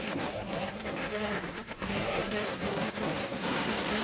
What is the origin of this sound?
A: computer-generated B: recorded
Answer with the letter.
A